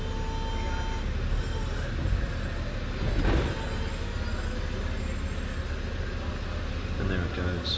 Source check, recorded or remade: recorded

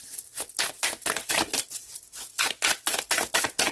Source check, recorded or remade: recorded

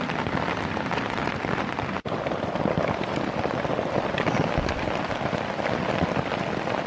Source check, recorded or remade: remade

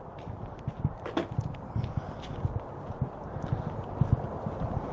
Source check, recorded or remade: recorded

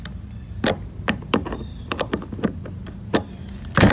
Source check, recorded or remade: recorded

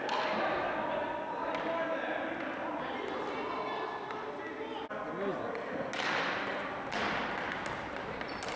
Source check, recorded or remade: recorded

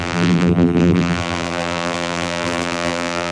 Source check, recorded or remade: remade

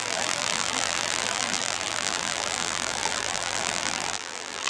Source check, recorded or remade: remade